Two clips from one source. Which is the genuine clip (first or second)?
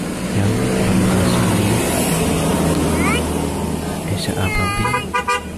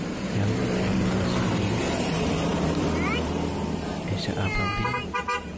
first